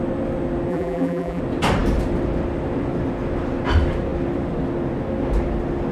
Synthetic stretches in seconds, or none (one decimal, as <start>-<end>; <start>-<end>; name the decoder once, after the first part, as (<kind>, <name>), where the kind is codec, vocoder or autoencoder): 0.7-1.4 (vocoder, BigVGAN v2)